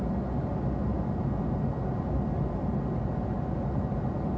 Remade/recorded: recorded